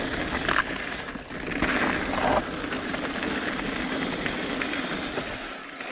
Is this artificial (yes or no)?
no